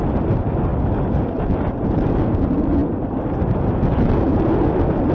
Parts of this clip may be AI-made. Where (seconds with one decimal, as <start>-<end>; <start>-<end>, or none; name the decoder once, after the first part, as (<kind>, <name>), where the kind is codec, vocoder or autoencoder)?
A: none